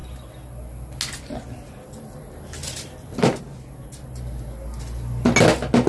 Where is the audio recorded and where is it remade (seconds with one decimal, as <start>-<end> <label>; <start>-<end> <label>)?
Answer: 0.0-5.9 recorded